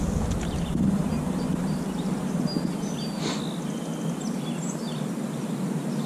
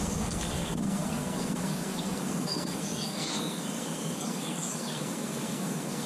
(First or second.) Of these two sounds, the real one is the first